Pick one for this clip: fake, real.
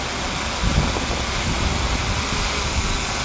real